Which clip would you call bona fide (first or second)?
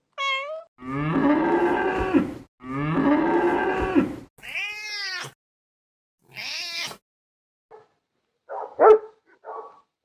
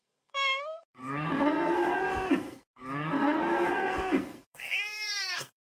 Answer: first